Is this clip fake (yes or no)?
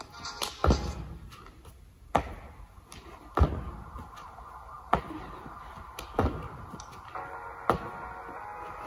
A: no